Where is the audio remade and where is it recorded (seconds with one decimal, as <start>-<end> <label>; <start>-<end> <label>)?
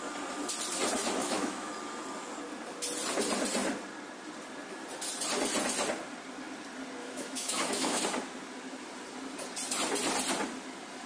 0.0-1.2 recorded; 1.2-1.7 remade; 1.7-7.0 recorded; 7.0-8.0 remade; 8.0-11.1 recorded